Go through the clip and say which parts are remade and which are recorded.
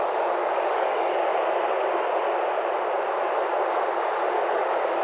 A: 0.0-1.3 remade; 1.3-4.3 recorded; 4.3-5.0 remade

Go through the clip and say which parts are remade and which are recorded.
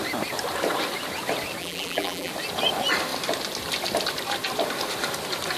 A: 0.0-1.6 recorded; 1.6-2.3 remade; 2.3-5.6 recorded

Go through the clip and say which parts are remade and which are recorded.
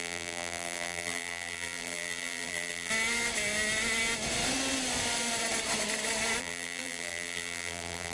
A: 0.0-2.9 remade; 2.9-6.4 recorded; 6.4-8.1 remade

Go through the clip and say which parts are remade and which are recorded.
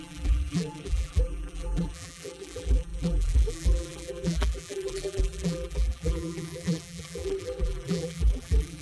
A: 0.0-8.8 remade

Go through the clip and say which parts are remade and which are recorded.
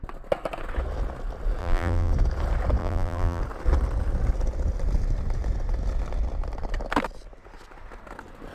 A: 0.0-1.6 recorded; 1.6-2.1 remade; 2.1-2.8 recorded; 2.8-3.4 remade; 3.4-8.5 recorded